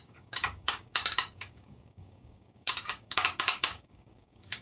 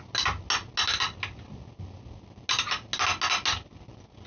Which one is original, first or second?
second